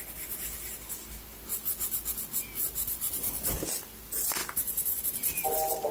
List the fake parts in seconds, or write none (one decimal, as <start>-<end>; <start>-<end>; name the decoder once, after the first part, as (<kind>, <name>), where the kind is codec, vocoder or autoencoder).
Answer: none